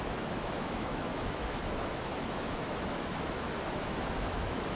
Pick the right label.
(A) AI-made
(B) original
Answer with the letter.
A